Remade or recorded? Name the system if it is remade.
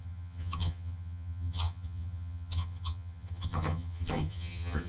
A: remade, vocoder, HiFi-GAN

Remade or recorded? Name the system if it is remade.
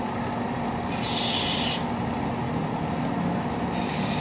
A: recorded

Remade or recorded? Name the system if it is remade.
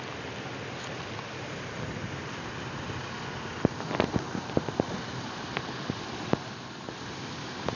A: recorded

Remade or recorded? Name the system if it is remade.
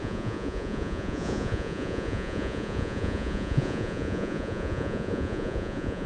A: remade, vocoder, Vocos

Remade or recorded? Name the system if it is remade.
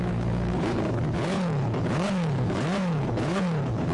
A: remade, codec, HILCodec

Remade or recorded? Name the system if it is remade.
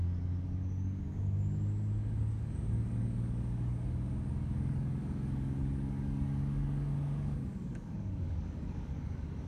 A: remade, codec, DAC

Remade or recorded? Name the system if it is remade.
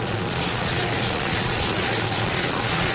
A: remade, vocoder, Vocos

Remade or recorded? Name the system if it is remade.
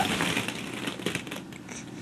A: recorded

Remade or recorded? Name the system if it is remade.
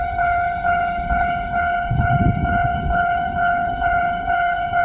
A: remade, codec, HILCodec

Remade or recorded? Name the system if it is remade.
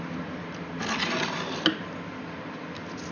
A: recorded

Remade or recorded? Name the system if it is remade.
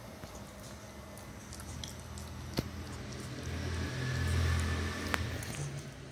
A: recorded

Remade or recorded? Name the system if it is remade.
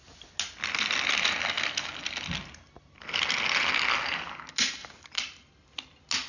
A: recorded